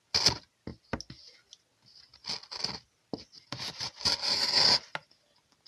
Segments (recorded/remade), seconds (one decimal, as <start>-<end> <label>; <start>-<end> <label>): 0.0-5.7 recorded